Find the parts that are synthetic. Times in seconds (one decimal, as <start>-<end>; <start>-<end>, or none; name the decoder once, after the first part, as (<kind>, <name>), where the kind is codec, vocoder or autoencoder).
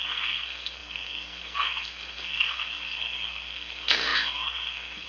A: 0.0-5.1 (codec, SNAC)